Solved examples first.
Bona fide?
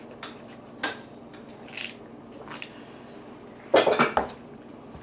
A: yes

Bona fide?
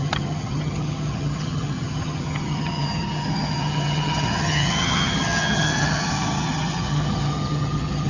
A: no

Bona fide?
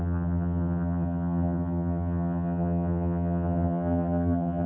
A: no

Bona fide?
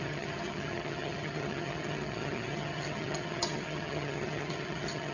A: no